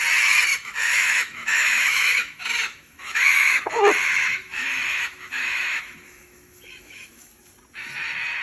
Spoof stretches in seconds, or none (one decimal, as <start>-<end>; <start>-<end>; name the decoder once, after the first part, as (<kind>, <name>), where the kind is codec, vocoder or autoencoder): 0.5-3.6 (autoencoder, DAC-VAE); 4.3-7.4